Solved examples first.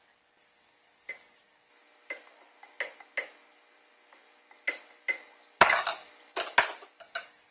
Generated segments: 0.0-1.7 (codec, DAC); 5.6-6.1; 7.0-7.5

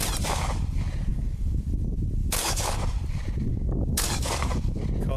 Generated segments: 1.1-1.6 (codec, DAC); 2.2-2.8; 3.5-4.8

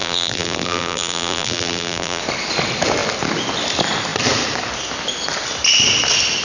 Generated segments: 0.0-2.2 (vocoder, BigVGAN v2)

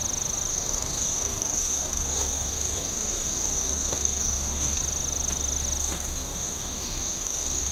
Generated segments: 0.5-4.8 (codec, DAC); 5.8-7.7

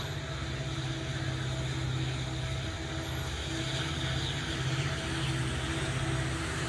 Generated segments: none

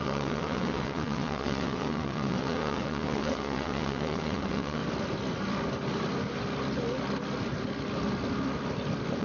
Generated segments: 0.0-4.8 (vocoder, WaveNeXt)

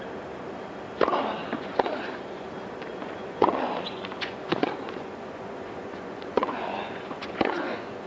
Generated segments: 1.4-2.5 (vocoder, Vocos); 2.9-8.1